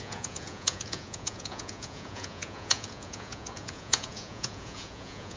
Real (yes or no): no